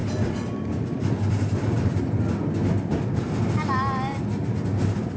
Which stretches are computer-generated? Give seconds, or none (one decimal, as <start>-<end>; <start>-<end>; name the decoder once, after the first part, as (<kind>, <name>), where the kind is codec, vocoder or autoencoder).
0.0-2.2 (vocoder, BigVGAN v2)